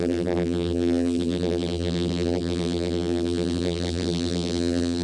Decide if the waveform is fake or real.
fake